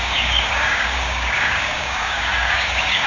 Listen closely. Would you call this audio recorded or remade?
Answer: remade